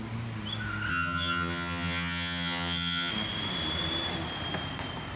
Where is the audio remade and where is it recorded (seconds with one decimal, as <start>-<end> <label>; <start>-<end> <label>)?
0.0-0.9 recorded; 0.9-3.1 remade; 3.1-5.2 recorded